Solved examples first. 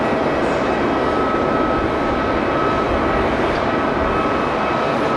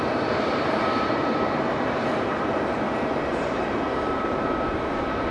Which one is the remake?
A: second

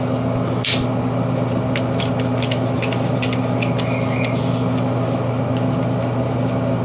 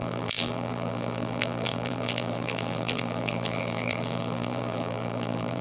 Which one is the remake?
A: second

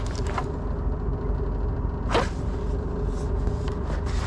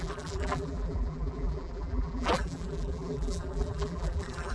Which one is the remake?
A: second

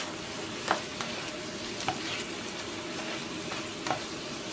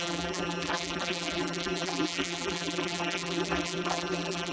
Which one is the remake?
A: second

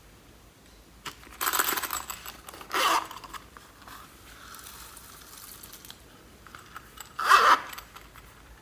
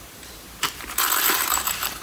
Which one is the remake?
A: second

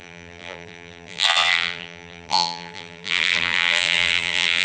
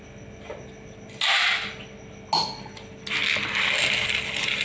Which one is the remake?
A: first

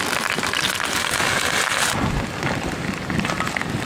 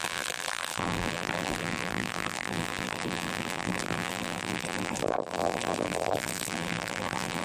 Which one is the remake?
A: second